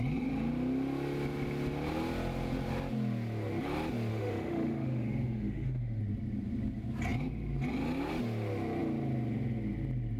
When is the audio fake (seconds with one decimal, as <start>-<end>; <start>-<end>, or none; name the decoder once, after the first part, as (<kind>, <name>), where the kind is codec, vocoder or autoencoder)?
4.1-6.0 (autoencoder, DAC-VAE)